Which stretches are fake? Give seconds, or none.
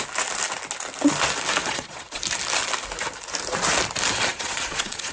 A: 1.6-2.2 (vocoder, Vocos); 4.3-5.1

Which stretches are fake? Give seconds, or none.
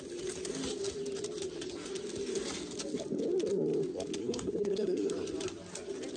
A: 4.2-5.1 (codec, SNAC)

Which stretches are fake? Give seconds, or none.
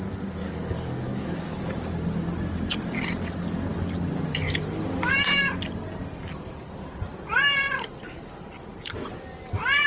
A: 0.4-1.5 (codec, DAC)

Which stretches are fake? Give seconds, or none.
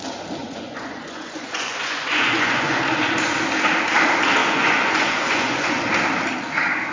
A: 0.4-2.8 (vocoder, Vocos); 4.4-5.8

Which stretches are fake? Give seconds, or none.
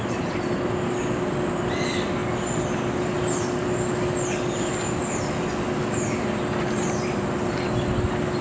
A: none